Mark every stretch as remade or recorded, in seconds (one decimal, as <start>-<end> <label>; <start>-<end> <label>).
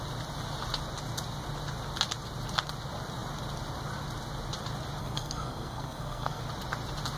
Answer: 0.0-5.0 recorded; 5.0-6.4 remade; 6.4-7.2 recorded